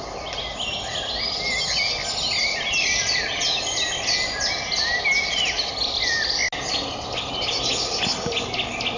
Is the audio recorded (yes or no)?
yes